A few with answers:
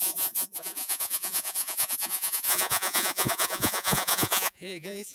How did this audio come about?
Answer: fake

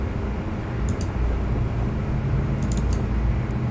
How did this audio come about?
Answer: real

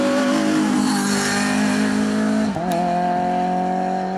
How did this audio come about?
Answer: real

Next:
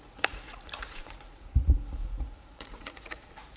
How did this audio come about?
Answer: fake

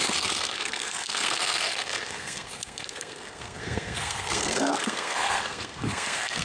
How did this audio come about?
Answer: fake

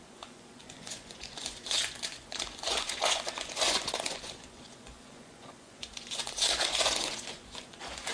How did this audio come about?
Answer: fake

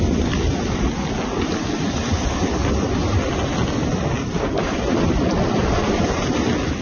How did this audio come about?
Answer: real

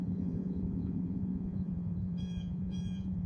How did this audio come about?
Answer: fake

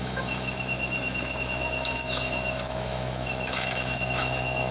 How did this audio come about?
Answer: fake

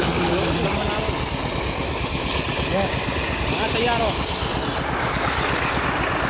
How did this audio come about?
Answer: real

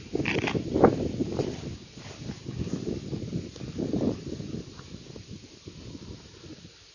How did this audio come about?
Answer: real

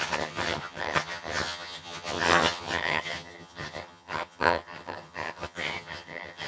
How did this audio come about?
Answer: fake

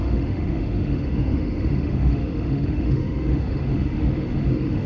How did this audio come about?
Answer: fake